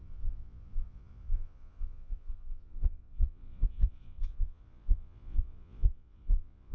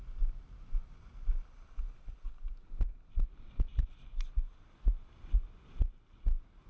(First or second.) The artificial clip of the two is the first